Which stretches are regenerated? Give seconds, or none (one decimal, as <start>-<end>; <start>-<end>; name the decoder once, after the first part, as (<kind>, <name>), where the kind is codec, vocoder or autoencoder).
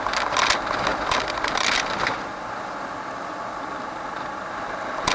0.9-3.6 (vocoder, BigVGAN v2)